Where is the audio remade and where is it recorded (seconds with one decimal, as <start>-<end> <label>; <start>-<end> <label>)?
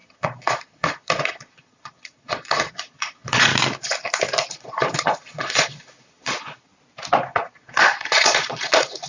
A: 0.0-3.5 remade; 3.5-4.5 recorded; 4.5-6.7 remade; 6.7-7.3 recorded; 7.3-9.1 remade